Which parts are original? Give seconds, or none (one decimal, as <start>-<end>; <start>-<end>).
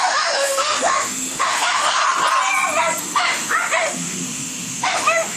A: 2.0-3.0